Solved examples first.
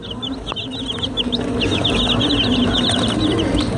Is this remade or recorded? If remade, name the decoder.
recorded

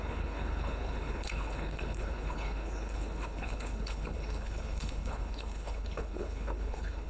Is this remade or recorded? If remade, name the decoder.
remade, codec, HILCodec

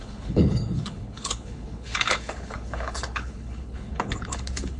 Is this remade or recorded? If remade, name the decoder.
remade, codec, HILCodec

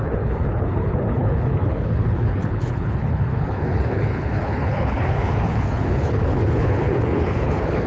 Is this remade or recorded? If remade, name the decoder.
remade, codec, HILCodec